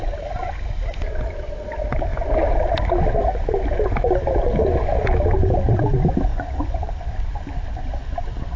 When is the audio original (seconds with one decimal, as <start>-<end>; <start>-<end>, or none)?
0.0-6.3; 6.8-8.6